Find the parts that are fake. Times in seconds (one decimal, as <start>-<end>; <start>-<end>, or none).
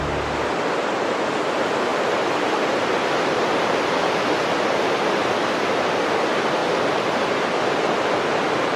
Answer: 1.9-3.3; 6.6-7.7